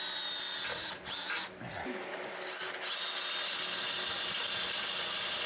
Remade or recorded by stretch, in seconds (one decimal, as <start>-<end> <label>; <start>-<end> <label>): 0.0-5.5 recorded